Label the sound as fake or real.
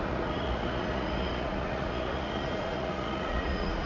fake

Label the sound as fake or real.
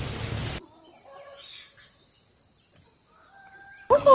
real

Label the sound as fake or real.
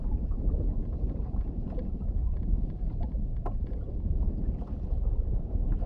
fake